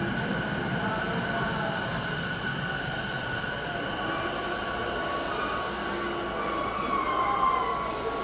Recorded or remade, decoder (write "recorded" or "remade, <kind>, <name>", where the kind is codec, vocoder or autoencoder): recorded